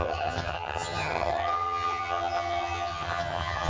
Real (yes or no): no